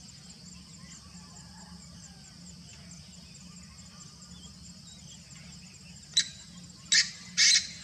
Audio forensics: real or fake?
real